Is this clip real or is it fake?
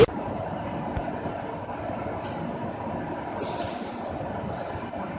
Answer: fake